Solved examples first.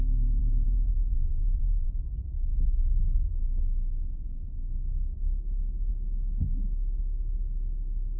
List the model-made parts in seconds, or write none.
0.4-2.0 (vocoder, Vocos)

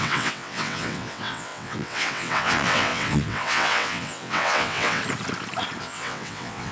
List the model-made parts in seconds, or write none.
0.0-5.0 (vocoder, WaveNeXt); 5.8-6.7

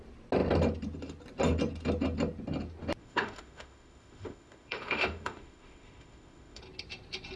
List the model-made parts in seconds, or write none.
3.0-6.6 (autoencoder, DAC-VAE)

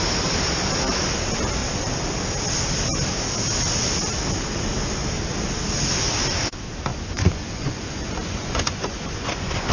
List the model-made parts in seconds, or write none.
6.9-9.7 (vocoder, Vocos)

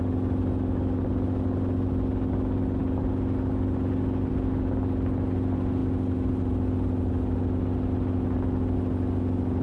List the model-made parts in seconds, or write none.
none